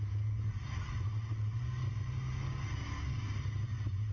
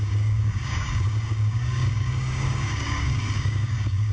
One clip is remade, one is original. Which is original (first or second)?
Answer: first